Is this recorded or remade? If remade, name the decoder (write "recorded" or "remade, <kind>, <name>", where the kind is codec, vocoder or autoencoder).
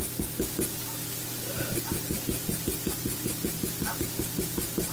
recorded